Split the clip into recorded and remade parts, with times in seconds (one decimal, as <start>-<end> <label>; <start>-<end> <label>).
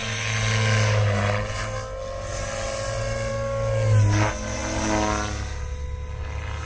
0.0-6.6 recorded